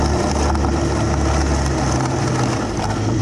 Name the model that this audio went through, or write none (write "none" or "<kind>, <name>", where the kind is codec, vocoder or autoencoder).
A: none